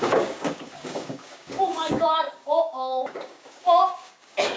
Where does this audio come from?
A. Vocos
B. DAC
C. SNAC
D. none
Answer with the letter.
B